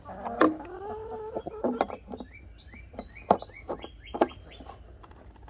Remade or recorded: recorded